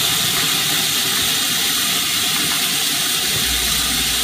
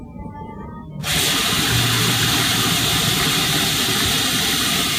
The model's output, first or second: second